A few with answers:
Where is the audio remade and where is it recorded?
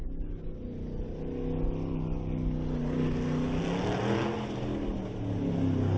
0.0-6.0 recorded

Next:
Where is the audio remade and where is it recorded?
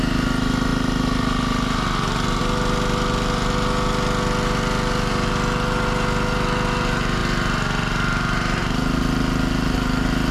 0.0-10.3 recorded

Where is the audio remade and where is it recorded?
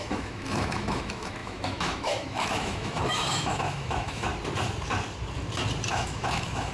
0.0-4.3 remade; 4.3-5.9 recorded; 5.9-6.7 remade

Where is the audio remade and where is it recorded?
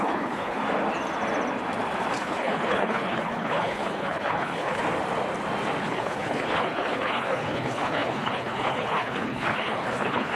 0.0-0.6 remade; 0.6-2.1 recorded; 2.1-4.8 remade; 4.8-5.8 recorded; 5.8-10.4 remade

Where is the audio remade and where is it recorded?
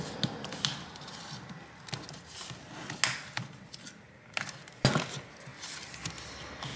0.0-6.8 recorded